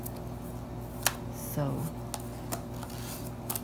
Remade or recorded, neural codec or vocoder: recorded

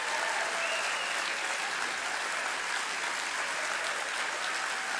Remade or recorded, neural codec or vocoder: recorded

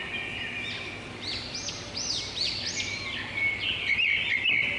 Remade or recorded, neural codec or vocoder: recorded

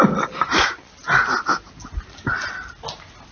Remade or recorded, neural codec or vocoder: recorded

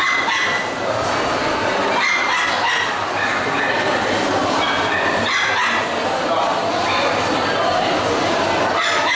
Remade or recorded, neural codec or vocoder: recorded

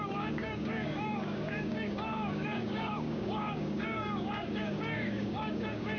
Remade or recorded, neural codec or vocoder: remade, codec, DAC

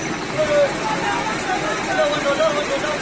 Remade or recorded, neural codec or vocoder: recorded